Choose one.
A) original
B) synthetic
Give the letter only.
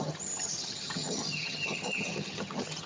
B